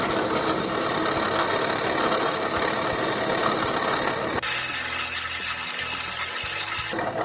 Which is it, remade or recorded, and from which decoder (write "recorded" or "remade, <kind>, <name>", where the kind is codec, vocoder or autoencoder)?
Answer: recorded